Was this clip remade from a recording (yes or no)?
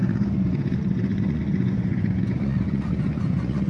yes